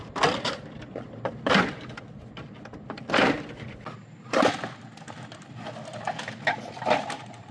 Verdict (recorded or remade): recorded